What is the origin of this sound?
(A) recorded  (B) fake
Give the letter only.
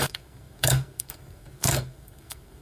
B